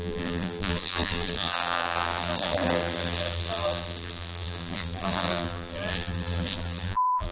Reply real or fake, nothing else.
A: fake